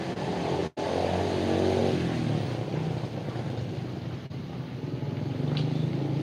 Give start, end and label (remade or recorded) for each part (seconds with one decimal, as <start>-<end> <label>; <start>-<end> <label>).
0.0-6.2 recorded